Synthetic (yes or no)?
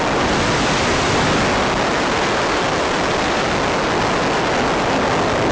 no